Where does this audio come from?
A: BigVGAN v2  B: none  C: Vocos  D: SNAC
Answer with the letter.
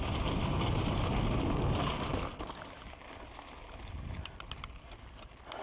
B